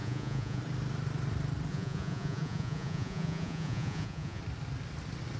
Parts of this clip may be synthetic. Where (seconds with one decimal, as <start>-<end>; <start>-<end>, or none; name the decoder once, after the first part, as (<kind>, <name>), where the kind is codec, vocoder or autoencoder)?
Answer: 0.0-0.6 (vocoder, Vocos); 1.7-4.4